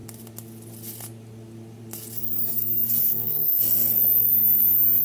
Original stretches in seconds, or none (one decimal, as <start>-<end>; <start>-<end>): 0.0-3.0; 3.6-5.0